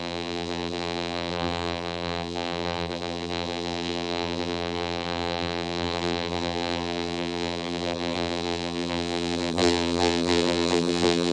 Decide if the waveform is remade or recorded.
remade